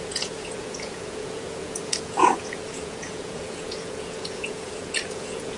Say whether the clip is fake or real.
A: fake